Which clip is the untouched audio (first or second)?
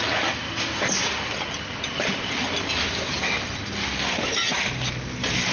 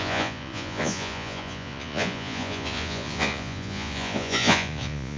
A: first